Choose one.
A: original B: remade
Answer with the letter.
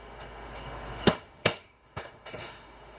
B